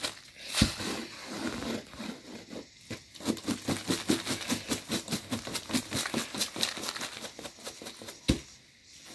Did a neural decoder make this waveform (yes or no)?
no